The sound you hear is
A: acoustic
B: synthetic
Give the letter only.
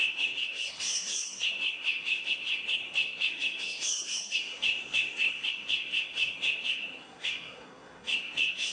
B